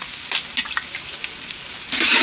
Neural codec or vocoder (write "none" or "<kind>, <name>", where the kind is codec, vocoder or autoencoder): none